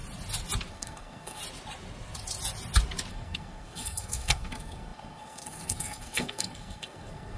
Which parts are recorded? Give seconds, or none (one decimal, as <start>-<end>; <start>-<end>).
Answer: 0.0-0.7; 1.4-3.1